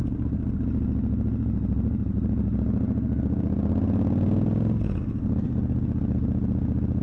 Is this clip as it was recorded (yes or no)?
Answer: yes